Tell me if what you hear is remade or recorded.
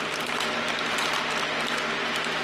recorded